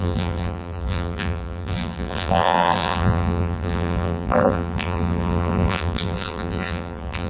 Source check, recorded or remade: remade